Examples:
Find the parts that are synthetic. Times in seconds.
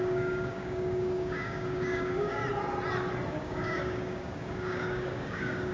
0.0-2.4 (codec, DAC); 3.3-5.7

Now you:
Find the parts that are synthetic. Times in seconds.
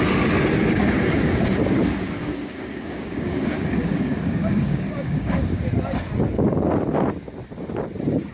0.6-5.6 (codec, DAC)